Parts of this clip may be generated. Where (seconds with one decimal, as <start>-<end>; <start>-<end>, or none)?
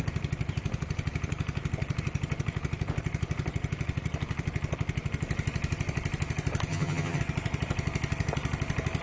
6.7-7.2